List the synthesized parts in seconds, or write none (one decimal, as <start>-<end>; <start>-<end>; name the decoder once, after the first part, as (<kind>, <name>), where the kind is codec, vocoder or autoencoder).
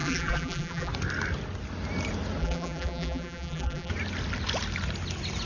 0.0-0.9 (vocoder, BigVGAN v2); 2.4-3.9